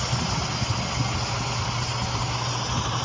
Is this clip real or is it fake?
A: real